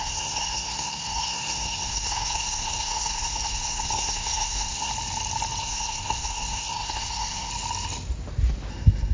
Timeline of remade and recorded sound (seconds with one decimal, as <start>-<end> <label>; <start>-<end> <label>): 0.0-4.9 remade; 4.9-5.6 recorded; 5.6-7.5 remade; 7.5-8.7 recorded; 8.7-9.1 remade